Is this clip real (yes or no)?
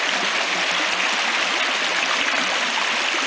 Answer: yes